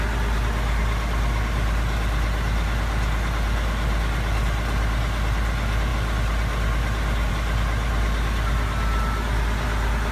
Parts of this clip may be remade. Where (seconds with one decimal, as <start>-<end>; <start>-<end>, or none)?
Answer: none